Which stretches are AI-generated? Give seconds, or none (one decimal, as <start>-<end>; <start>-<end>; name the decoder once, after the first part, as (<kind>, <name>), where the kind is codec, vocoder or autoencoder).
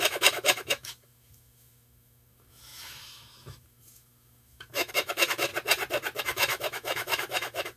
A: 0.0-5.5 (autoencoder, DAC-VAE); 6.2-7.8